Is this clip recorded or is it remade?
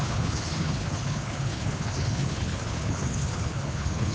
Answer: remade